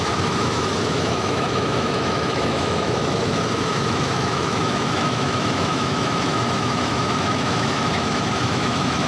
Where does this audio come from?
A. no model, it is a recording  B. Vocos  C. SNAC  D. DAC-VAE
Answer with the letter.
D